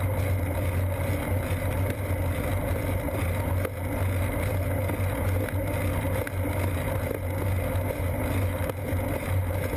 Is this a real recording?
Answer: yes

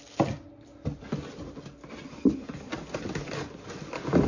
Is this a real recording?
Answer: yes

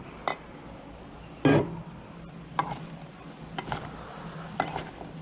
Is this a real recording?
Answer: yes